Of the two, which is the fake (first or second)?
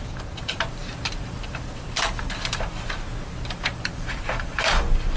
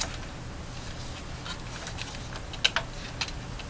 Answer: first